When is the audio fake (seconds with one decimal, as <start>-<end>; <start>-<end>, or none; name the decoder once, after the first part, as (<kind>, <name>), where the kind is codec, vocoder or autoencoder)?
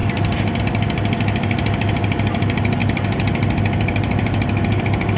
2.8-4.8 (vocoder, BigVGAN v2)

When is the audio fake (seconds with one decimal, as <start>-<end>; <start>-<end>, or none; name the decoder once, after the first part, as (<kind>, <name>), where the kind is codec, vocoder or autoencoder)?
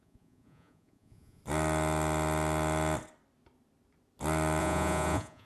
0.0-1.4 (vocoder, Vocos); 4.6-5.4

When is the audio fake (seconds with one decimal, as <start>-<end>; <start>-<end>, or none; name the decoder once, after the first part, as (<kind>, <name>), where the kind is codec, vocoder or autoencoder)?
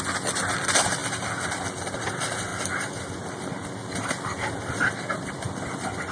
none